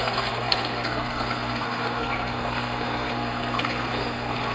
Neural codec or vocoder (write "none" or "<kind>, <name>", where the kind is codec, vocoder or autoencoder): codec, SNAC